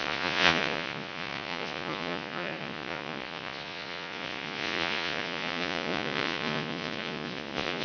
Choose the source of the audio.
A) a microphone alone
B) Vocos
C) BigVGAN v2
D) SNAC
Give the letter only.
B